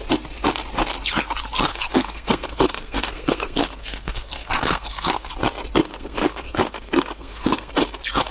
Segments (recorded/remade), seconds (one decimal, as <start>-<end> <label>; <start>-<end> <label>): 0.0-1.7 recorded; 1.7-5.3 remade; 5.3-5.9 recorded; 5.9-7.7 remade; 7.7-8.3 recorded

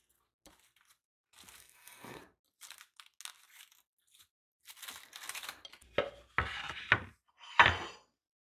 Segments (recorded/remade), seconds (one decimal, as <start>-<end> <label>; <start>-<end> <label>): 0.0-1.6 recorded; 1.6-2.2 remade; 2.2-8.5 recorded

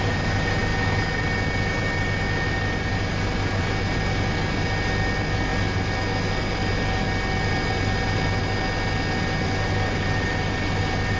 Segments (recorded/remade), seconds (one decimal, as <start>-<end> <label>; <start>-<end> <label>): 0.0-11.2 recorded

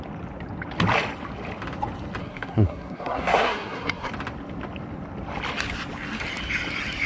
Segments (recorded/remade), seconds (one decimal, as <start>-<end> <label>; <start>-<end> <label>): 0.0-2.2 recorded; 2.2-4.1 remade; 4.1-7.1 recorded

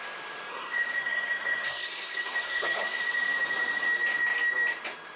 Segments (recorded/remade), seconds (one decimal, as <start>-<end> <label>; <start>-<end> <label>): 0.0-0.5 recorded; 0.5-3.0 remade; 3.0-5.2 recorded

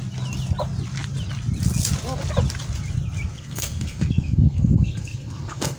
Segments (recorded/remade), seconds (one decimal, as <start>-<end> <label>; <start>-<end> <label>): 0.0-3.3 recorded; 3.3-5.8 remade

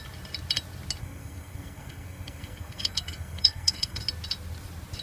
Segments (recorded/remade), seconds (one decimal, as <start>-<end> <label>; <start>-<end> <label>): 0.0-1.0 recorded; 1.0-4.0 remade; 4.0-5.0 recorded

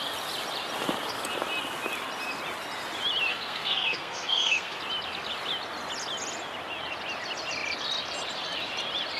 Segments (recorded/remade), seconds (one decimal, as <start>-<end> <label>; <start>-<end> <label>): 0.0-3.3 recorded; 3.3-4.8 remade; 4.8-9.2 recorded